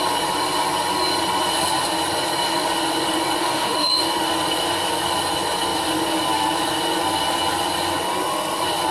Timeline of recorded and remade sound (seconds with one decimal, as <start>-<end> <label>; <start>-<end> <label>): 0.0-3.4 recorded; 3.4-3.9 remade; 3.9-8.9 recorded